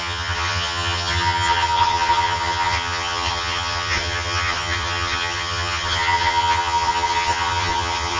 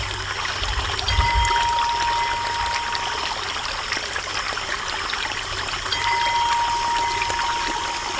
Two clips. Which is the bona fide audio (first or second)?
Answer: second